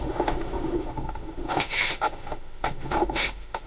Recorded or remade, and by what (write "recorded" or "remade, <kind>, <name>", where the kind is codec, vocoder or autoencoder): remade, autoencoder, DAC-VAE